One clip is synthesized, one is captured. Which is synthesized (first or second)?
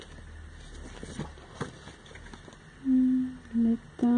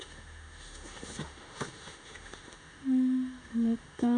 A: second